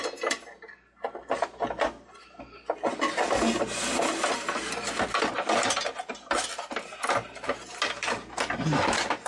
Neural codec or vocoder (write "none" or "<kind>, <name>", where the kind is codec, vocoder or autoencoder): none